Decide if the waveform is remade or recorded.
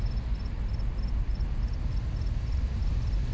recorded